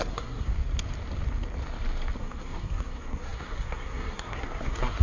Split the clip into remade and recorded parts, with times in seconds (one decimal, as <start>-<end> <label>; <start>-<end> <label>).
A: 0.0-0.5 remade; 0.5-2.2 recorded; 2.2-5.0 remade